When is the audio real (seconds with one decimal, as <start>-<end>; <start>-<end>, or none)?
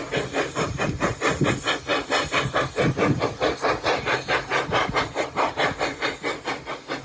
0.0-7.0